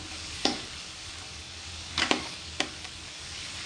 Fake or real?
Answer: fake